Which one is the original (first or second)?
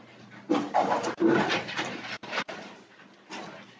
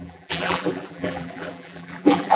first